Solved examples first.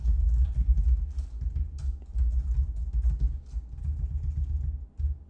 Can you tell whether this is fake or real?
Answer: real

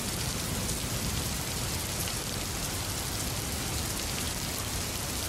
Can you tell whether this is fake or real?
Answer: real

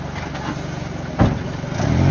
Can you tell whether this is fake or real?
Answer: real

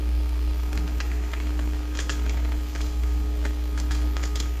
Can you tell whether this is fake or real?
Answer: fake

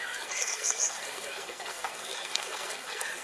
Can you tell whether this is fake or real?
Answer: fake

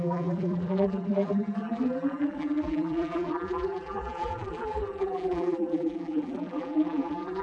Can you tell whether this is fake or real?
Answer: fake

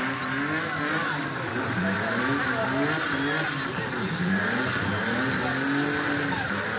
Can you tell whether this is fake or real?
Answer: real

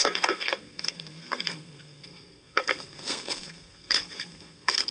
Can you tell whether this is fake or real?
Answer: fake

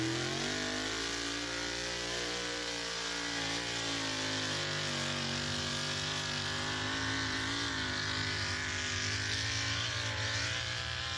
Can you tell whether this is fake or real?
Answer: real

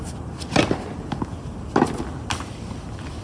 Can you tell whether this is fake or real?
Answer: real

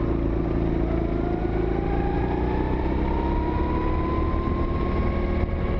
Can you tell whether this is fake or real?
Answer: real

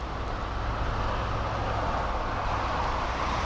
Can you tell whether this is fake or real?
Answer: real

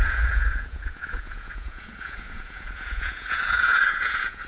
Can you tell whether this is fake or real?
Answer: fake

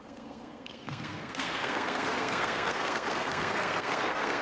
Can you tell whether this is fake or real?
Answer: fake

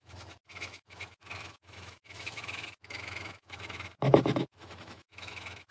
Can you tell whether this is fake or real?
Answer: fake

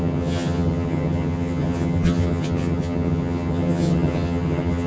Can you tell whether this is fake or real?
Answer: fake